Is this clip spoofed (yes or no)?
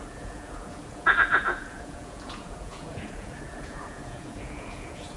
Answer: yes